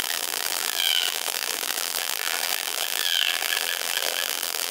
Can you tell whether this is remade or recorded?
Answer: remade